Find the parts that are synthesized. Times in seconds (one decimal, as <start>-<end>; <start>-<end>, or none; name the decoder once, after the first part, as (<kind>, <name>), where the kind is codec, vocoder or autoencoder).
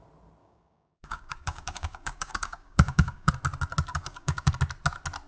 0.4-3.3 (codec, DAC); 3.9-4.5